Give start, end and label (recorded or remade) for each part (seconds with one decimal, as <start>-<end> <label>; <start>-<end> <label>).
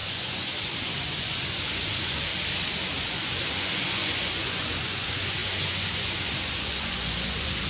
0.0-2.3 remade; 2.3-3.0 recorded; 3.0-7.7 remade